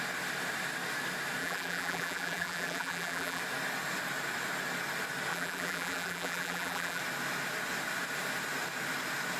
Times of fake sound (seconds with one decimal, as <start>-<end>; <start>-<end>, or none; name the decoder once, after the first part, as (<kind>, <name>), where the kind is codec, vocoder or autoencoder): 1.4-3.4 (vocoder, BigVGAN v2); 5.3-7.0